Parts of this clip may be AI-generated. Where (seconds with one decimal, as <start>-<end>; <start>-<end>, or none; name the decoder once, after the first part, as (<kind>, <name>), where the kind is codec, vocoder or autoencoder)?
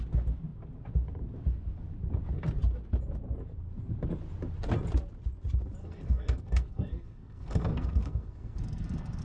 5.8-9.2 (codec, SNAC)